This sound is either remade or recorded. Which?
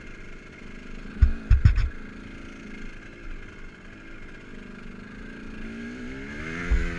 recorded